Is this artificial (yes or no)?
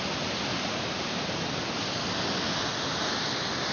no